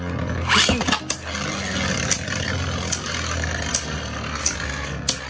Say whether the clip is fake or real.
real